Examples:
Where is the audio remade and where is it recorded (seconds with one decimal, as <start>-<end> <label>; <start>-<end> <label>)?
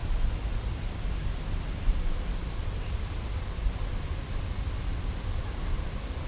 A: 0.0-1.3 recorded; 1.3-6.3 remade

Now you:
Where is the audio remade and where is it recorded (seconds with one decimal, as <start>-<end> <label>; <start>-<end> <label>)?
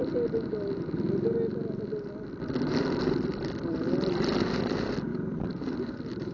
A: 0.0-6.3 recorded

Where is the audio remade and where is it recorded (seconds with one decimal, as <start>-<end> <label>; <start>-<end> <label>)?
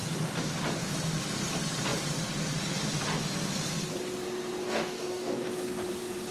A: 0.0-4.6 recorded; 4.6-5.5 remade; 5.5-6.3 recorded